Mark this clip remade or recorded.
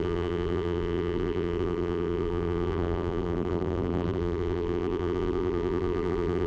remade